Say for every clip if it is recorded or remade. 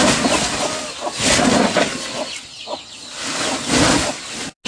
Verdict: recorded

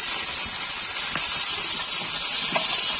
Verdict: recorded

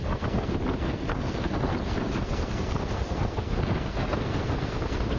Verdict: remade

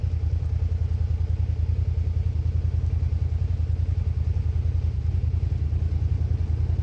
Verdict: recorded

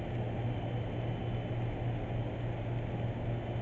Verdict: recorded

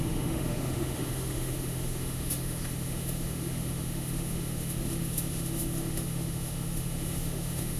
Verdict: remade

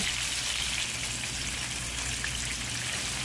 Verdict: recorded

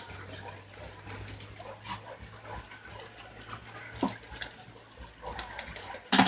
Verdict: recorded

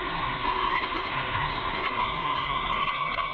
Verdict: remade